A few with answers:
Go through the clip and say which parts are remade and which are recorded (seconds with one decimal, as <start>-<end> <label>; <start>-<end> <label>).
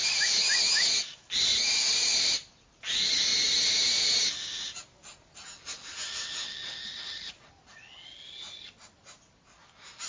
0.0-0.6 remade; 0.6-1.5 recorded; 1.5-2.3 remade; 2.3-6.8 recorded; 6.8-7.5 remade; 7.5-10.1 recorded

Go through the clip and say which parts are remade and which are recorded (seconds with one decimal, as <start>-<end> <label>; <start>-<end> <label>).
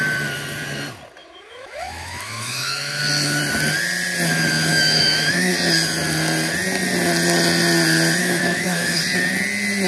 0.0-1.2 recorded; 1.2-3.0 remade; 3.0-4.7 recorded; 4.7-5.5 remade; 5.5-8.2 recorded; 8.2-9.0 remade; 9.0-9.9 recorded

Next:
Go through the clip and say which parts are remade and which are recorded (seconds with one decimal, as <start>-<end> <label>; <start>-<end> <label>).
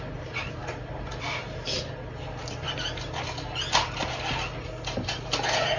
0.0-5.8 recorded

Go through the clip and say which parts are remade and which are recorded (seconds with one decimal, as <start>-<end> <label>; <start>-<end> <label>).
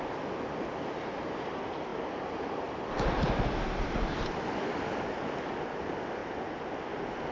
0.0-7.3 recorded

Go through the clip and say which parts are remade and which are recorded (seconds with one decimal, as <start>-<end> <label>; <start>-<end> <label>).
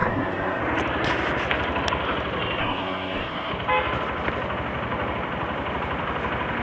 0.0-0.6 remade; 0.6-2.6 recorded; 2.6-3.5 remade; 3.5-6.6 recorded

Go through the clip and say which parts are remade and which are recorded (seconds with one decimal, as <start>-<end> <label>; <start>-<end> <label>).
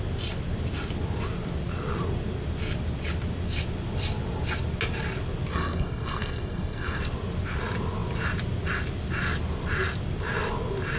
0.0-5.5 recorded; 5.5-7.0 remade; 7.0-11.0 recorded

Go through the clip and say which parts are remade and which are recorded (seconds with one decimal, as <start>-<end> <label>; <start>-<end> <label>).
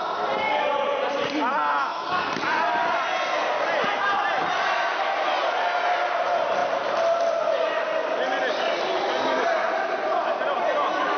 0.0-11.2 recorded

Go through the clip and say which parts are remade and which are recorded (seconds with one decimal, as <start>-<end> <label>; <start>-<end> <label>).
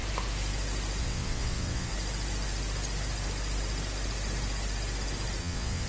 0.0-1.0 recorded; 1.0-1.9 remade; 1.9-5.4 recorded; 5.4-5.9 remade